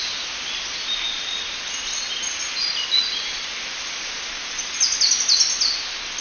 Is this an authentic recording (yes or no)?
yes